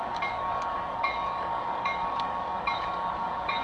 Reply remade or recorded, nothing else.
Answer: remade